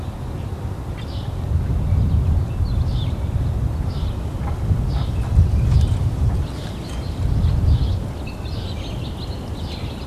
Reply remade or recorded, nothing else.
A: recorded